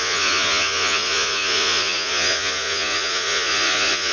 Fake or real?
fake